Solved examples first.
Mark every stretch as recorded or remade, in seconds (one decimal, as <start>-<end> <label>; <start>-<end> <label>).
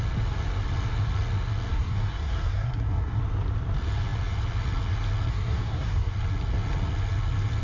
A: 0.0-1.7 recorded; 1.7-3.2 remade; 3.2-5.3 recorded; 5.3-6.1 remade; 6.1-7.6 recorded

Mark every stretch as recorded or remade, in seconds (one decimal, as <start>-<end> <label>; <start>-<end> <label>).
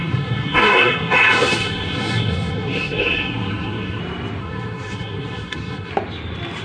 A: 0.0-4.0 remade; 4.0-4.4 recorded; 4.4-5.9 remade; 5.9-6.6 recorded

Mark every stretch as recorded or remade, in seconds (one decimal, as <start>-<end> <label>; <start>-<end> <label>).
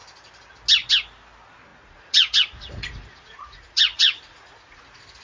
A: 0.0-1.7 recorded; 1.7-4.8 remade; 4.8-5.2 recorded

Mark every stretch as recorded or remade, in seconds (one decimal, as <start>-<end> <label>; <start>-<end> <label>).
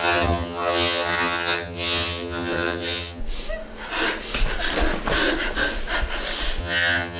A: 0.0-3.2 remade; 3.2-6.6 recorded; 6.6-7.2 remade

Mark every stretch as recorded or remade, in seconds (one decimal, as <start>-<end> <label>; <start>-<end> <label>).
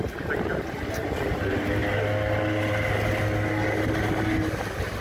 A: 0.0-5.0 recorded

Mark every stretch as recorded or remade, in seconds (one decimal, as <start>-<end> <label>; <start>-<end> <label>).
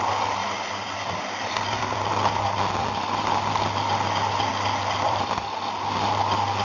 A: 0.0-0.4 recorded; 0.4-2.1 remade; 2.1-2.8 recorded; 2.8-3.5 remade; 3.5-4.5 recorded; 4.5-5.4 remade; 5.4-6.6 recorded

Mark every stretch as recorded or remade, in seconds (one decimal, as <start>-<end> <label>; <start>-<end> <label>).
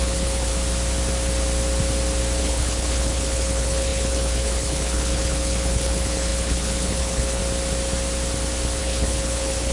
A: 0.0-0.5 remade; 0.5-2.4 recorded; 2.4-7.4 remade; 7.4-8.8 recorded; 8.8-9.7 remade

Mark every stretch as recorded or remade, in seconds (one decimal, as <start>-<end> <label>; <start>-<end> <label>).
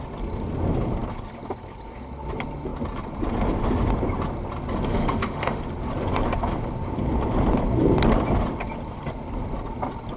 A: 0.0-4.9 recorded; 4.9-5.6 remade; 5.6-10.2 recorded